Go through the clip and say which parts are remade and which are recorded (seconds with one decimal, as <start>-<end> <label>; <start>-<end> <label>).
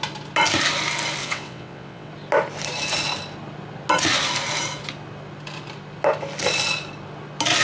0.0-1.2 recorded; 1.2-2.1 remade; 2.1-7.6 recorded